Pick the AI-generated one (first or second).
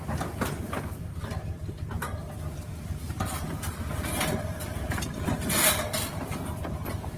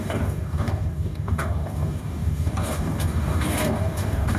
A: second